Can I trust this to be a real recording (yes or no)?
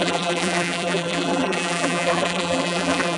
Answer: no